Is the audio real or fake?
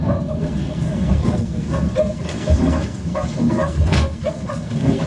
fake